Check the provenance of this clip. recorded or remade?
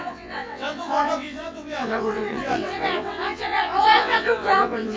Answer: remade